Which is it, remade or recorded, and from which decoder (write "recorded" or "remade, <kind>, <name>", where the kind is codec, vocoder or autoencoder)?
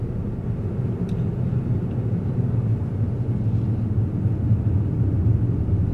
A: recorded